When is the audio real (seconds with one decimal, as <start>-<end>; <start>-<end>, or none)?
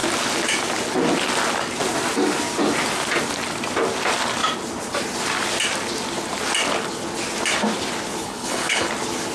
0.0-8.2; 8.9-9.3